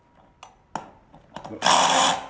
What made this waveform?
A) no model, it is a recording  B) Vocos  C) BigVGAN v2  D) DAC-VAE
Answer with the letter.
A